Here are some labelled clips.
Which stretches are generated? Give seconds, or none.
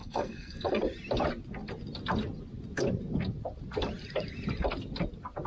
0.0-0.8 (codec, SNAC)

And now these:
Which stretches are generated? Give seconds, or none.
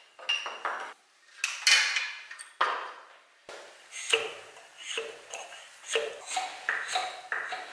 none